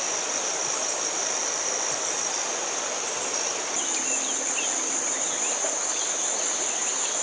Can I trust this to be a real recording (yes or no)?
no